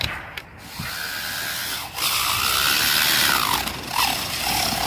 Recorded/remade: recorded